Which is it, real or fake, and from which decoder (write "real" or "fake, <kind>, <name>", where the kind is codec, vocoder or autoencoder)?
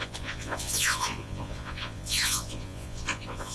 fake, vocoder, Vocos